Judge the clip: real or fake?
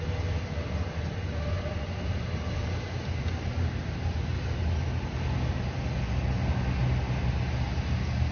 real